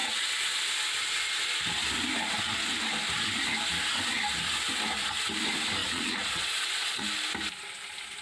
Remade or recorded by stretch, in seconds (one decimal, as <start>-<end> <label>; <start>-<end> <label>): 0.0-5.8 recorded; 5.8-7.0 remade; 7.0-8.2 recorded